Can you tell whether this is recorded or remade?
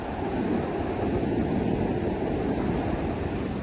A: recorded